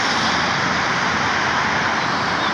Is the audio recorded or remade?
recorded